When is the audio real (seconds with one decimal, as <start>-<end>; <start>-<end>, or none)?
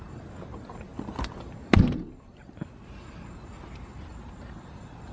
0.0-5.1